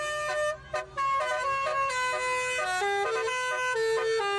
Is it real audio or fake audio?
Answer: real